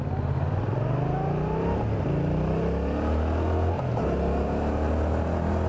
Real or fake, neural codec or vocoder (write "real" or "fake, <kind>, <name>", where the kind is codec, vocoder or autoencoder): real